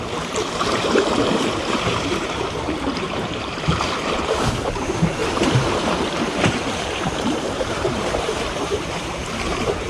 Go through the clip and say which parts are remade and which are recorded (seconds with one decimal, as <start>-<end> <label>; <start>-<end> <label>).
0.0-9.9 remade